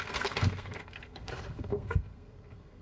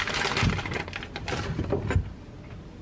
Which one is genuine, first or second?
second